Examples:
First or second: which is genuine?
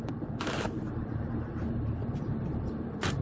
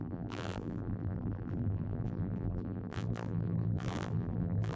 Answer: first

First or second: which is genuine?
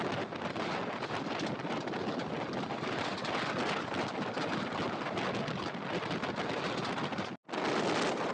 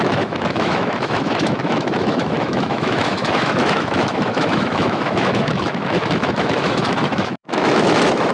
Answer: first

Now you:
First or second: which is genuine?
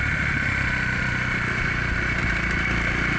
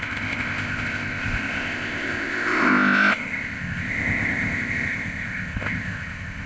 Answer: first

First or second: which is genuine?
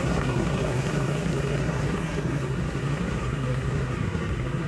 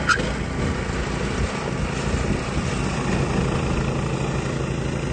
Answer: second